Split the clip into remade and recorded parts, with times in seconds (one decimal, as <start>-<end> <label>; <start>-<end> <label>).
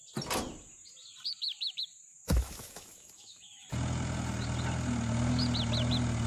0.0-2.1 recorded; 2.1-3.7 remade; 3.7-6.3 recorded